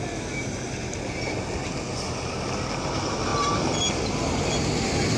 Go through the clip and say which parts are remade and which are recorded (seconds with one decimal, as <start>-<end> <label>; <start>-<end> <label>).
0.0-5.2 recorded